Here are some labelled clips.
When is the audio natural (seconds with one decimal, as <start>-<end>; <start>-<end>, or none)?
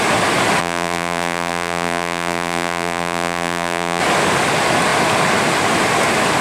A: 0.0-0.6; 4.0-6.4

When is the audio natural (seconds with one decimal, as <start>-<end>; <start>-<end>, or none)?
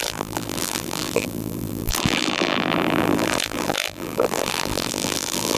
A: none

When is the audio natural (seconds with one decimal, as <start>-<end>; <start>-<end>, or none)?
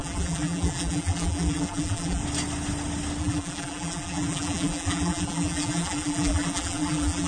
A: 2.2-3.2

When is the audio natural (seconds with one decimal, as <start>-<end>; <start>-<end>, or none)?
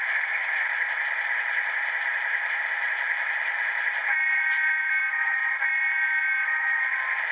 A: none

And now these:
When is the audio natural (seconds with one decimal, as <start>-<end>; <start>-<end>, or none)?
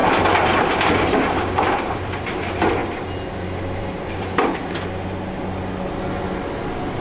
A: 4.6-7.0